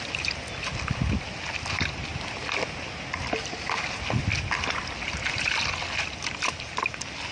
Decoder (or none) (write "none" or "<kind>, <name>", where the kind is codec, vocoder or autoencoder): none